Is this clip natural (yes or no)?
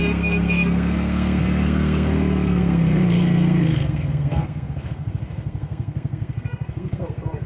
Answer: no